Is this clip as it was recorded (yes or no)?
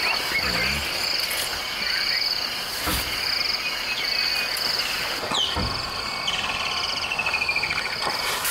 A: yes